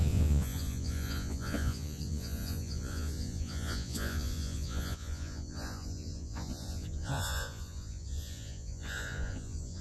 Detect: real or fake fake